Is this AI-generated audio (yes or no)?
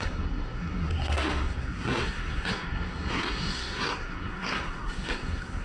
yes